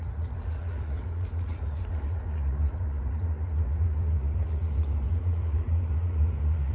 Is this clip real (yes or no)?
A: no